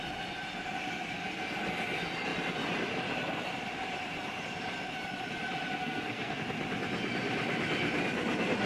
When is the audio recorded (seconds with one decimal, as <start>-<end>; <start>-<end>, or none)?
0.0-5.8; 6.4-8.7